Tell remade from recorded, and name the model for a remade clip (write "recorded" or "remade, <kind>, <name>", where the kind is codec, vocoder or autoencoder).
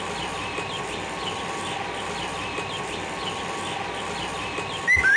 recorded